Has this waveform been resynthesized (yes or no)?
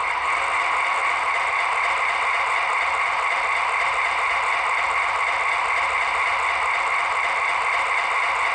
no